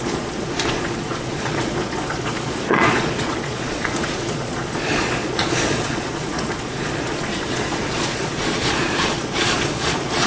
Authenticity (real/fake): fake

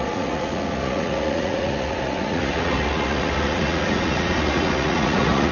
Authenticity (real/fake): fake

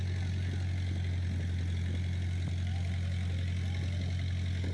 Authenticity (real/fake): real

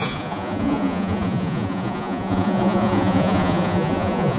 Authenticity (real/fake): fake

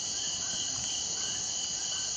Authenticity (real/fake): real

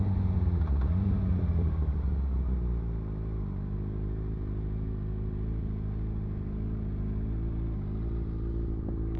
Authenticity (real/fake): real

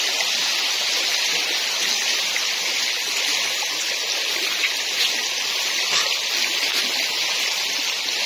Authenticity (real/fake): real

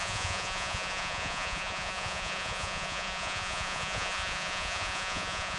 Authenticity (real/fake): fake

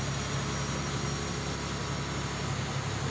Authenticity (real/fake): real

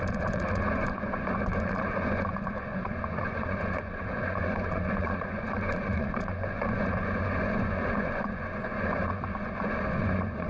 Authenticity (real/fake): fake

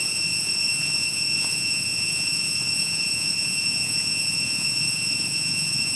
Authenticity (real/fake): fake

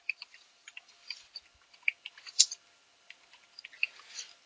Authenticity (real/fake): real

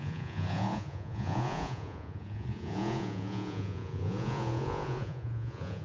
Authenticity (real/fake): fake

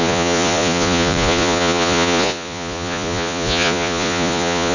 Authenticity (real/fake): fake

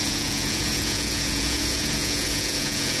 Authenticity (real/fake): fake